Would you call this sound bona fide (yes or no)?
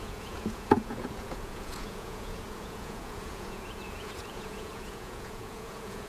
no